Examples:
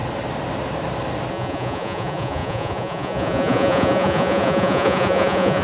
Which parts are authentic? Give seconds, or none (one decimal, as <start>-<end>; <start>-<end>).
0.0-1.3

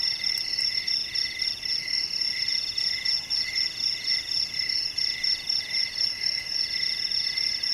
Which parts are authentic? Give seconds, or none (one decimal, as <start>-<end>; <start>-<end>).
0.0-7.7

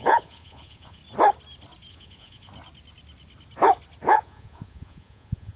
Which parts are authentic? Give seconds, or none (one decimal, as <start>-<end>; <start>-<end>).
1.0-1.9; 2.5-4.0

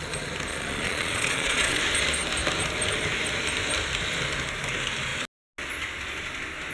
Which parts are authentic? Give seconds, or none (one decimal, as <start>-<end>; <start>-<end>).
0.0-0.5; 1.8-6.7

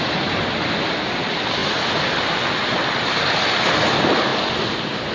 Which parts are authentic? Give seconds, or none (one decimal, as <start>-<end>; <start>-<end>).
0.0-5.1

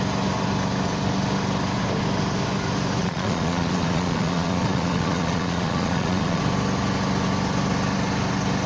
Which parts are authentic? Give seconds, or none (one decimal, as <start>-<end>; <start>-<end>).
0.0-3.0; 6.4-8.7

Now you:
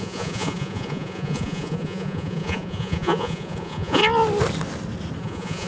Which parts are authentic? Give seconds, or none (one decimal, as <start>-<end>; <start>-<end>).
4.0-5.2

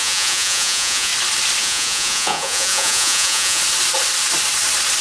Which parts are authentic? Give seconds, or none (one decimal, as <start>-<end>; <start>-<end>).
1.1-1.6; 3.6-5.0